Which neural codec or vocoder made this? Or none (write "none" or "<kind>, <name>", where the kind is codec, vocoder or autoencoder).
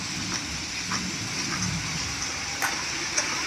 none